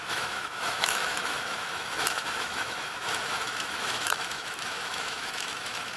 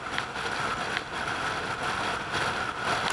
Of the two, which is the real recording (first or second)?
second